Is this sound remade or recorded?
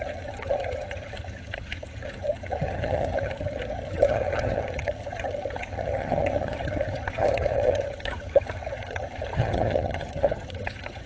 remade